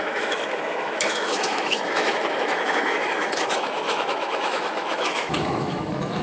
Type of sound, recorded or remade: remade